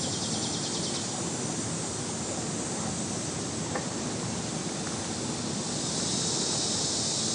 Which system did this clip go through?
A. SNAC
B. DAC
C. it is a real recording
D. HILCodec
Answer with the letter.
C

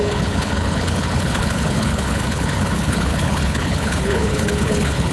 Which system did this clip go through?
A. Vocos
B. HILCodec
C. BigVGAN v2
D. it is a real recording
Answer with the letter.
B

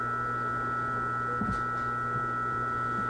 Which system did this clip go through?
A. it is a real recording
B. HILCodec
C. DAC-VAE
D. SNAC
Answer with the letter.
A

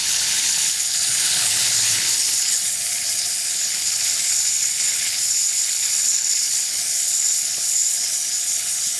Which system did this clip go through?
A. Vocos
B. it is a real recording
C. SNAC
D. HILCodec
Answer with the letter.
D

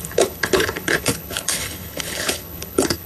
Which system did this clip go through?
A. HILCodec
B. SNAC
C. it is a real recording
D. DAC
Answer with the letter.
A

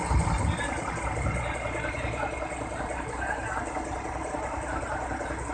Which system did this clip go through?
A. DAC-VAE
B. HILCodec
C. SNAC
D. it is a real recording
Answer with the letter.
D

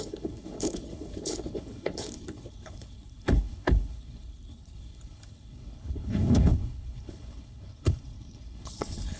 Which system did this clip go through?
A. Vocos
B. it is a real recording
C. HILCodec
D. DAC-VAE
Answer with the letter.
C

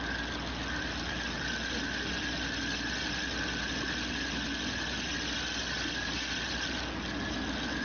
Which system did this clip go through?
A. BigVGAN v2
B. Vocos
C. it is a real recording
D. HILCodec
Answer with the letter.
C